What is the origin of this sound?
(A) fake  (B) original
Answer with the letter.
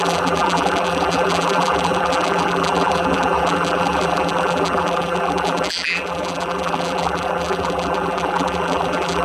A